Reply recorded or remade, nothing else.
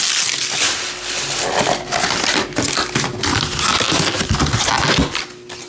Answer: recorded